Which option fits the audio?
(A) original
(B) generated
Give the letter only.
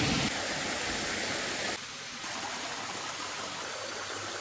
A